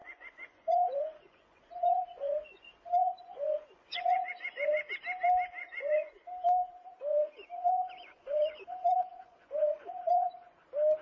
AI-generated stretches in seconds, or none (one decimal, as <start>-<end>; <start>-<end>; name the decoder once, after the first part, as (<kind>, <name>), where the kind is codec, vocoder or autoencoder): 0.0-4.9 (vocoder, Vocos); 5.6-6.3; 7.1-10.5